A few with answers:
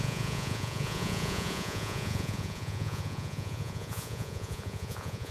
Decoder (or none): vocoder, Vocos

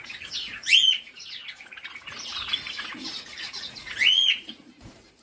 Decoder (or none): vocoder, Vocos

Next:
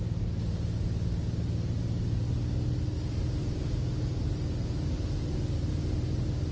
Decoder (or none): none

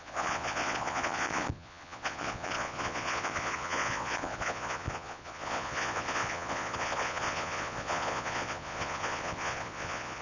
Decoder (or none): vocoder, Vocos